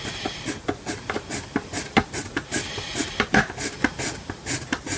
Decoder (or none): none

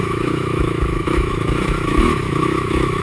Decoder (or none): autoencoder, DAC-VAE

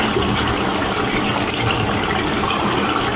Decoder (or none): none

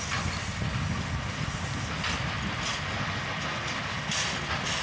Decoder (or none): none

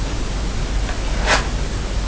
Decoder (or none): none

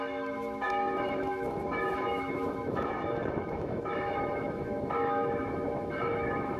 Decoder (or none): autoencoder, DAC-VAE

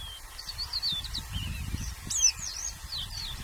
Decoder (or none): none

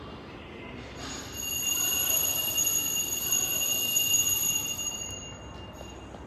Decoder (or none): none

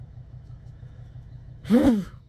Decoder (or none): autoencoder, DAC-VAE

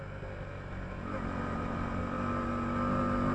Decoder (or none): none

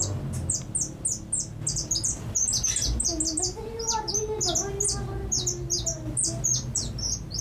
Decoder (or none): none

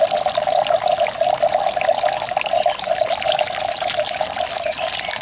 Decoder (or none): none